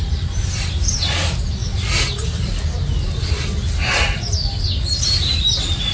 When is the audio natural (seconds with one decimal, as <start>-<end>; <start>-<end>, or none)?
0.0-5.9